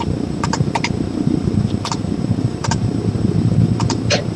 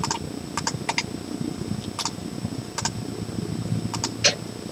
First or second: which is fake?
first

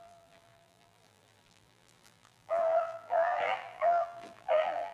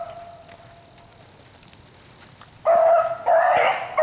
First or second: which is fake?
first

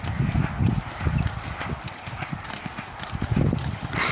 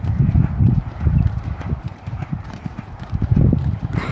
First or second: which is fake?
second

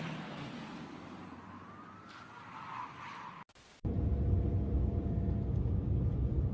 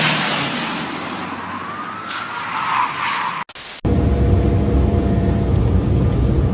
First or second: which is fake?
first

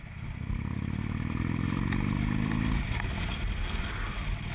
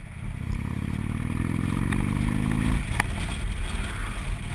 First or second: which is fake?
first